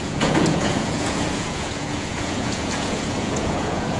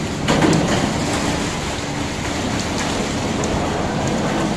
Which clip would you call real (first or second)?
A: second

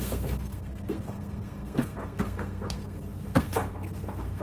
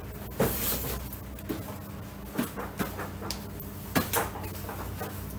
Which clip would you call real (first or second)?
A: second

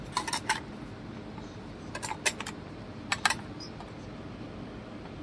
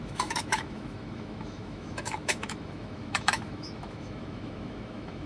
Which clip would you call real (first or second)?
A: first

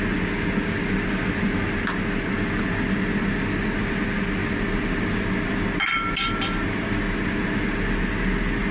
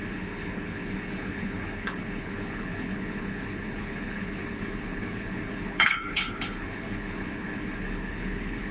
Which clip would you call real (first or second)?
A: first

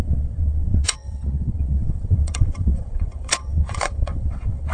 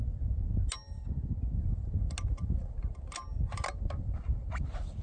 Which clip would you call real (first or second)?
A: second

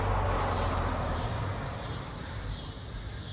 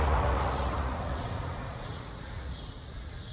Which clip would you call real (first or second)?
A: first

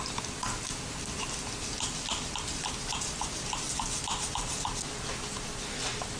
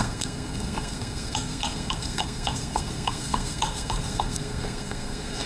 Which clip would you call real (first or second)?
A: first